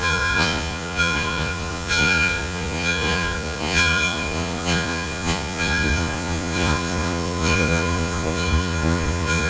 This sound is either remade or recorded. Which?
remade